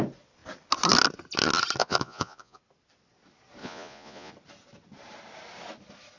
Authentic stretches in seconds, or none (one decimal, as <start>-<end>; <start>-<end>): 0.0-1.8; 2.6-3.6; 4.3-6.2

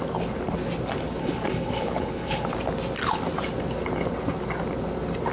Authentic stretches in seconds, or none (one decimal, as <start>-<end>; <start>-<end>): 0.0-1.2; 2.5-5.3

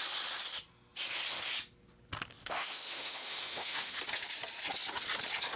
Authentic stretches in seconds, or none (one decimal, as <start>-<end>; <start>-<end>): 0.0-2.4; 4.0-5.6

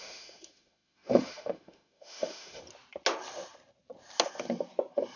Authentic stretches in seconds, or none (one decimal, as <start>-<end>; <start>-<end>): 2.6-5.2